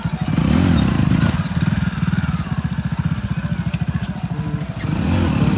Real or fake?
real